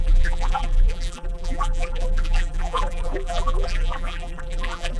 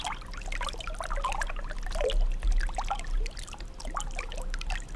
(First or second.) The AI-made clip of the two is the first